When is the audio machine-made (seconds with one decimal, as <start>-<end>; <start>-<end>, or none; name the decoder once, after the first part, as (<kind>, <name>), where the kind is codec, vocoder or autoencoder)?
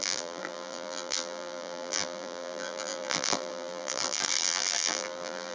0.0-5.5 (vocoder, BigVGAN v2)